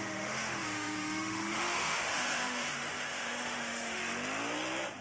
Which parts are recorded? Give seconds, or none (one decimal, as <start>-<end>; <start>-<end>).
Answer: 4.0-5.0